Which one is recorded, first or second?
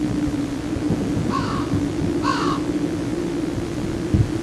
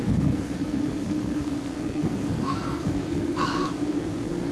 first